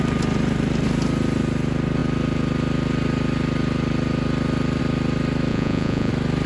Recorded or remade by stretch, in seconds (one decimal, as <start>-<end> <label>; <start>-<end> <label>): 0.0-5.5 recorded; 5.5-6.1 remade; 6.1-6.5 recorded